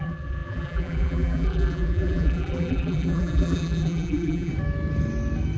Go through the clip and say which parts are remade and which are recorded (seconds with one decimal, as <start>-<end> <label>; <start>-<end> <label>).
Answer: 0.0-4.5 remade; 4.5-5.6 recorded